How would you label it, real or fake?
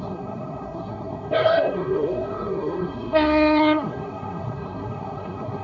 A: fake